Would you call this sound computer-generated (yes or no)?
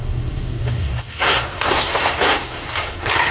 yes